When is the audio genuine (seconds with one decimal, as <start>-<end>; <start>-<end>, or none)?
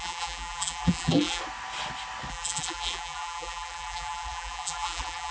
1.4-2.3